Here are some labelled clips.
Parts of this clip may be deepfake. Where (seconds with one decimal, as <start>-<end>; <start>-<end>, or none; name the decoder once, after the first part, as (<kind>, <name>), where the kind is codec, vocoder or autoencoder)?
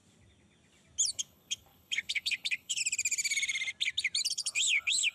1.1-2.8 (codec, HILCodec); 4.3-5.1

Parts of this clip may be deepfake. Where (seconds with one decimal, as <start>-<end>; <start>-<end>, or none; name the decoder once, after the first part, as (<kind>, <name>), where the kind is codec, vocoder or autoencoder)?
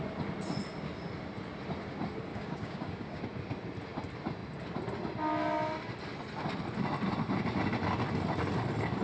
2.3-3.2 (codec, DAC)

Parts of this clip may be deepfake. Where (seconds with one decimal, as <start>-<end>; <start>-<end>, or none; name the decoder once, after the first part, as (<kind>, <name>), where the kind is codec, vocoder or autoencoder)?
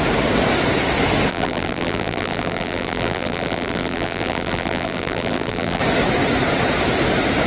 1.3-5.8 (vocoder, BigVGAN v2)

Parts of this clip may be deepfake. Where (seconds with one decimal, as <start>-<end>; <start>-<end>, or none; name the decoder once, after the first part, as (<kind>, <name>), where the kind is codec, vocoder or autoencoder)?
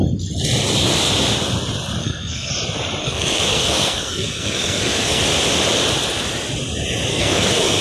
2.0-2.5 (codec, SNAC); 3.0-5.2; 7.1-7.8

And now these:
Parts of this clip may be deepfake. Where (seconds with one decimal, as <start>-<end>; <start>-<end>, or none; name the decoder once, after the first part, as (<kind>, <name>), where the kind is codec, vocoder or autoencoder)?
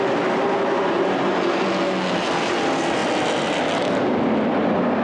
none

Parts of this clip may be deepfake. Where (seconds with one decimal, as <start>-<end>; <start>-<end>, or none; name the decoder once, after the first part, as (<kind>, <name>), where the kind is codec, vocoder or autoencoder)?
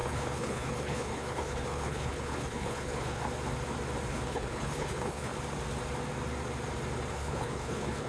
0.0-3.2 (codec, HILCodec); 4.1-5.3; 7.1-8.1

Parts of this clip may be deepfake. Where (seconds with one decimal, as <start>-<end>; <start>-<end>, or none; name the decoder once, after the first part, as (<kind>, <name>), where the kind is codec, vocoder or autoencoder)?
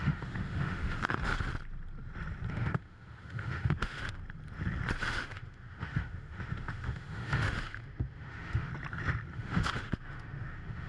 0.0-1.3 (autoencoder, DAC-VAE); 2.5-4.2; 5.0-8.7; 9.3-10.9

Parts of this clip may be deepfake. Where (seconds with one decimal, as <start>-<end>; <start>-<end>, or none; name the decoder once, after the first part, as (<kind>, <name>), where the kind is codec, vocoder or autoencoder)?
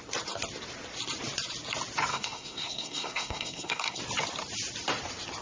2.1-4.0 (codec, SNAC)